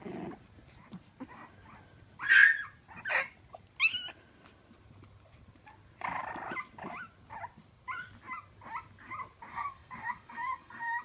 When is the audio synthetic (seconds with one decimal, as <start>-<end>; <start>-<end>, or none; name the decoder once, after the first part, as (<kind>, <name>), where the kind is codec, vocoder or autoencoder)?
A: 9.5-11.0 (codec, SNAC)